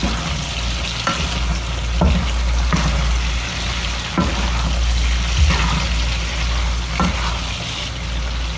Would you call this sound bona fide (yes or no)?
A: yes